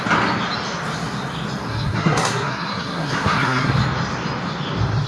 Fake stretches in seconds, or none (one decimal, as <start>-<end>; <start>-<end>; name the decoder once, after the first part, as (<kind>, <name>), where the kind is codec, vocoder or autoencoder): 1.7-3.7 (codec, SNAC)